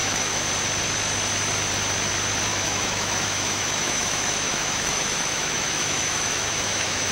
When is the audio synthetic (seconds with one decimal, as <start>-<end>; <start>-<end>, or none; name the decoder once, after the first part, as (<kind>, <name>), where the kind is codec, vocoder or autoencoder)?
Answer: 0.0-0.5 (autoencoder, DAC-VAE); 2.5-7.1